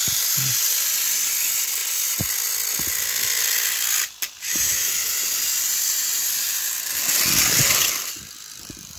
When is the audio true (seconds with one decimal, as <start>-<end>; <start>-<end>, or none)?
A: 0.0-9.0